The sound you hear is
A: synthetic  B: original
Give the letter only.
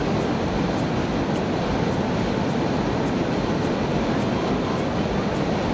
B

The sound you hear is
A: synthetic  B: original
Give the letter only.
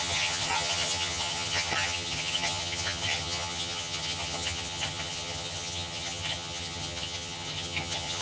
A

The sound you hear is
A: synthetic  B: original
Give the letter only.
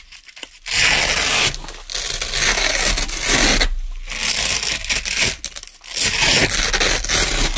B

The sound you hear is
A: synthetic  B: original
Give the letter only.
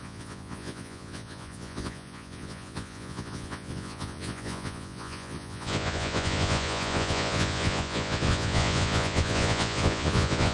A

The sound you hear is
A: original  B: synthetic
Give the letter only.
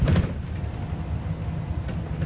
A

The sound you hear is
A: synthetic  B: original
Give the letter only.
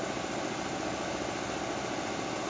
B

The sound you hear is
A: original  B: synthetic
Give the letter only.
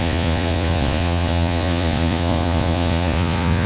B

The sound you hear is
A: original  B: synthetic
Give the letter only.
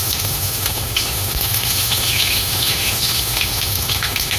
B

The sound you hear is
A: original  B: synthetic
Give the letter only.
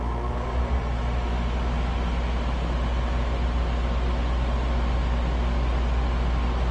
A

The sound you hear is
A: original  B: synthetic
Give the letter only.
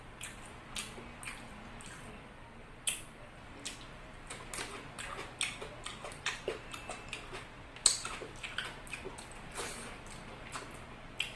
A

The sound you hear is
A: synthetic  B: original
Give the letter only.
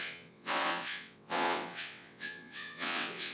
A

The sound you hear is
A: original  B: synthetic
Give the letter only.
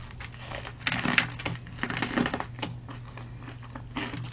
A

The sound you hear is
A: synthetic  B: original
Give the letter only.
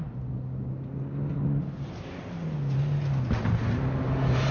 B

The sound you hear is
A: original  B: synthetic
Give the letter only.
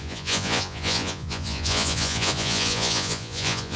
B